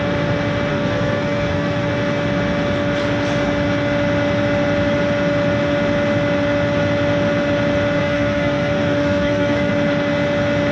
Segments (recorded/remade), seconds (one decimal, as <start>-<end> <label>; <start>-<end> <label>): 0.0-0.7 recorded; 0.7-1.9 remade; 1.9-8.0 recorded; 8.0-9.7 remade; 9.7-10.7 recorded